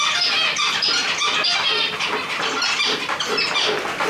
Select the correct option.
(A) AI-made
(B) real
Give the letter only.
B